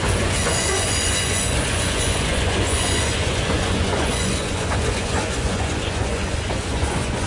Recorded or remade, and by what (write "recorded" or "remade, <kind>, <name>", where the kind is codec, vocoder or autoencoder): remade, vocoder, Vocos